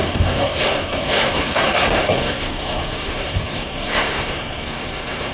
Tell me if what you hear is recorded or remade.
remade